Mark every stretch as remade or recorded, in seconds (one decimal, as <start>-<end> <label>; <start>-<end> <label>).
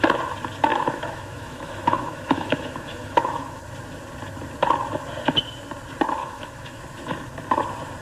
0.0-0.7 recorded; 0.7-3.6 remade; 3.6-6.2 recorded; 6.2-6.8 remade; 6.8-8.0 recorded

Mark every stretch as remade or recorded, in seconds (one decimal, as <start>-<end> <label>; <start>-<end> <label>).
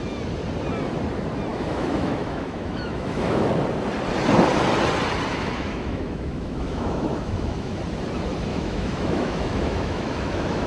0.0-1.5 recorded; 1.5-3.5 remade; 3.5-5.3 recorded; 5.3-7.8 remade; 7.8-8.5 recorded; 8.5-10.7 remade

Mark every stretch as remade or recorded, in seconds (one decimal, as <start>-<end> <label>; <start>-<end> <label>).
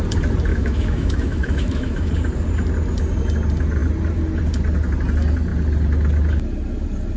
0.0-0.5 recorded; 0.5-2.1 remade; 2.1-7.2 recorded